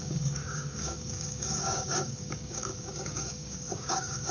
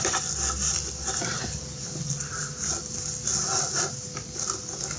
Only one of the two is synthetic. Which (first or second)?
first